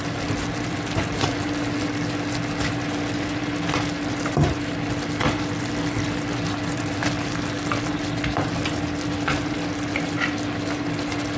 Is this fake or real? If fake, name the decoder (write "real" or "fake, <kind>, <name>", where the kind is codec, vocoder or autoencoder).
real